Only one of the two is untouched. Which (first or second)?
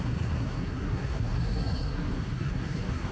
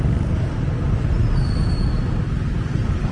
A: second